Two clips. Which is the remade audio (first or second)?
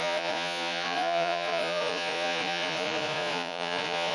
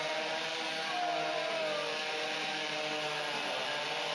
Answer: first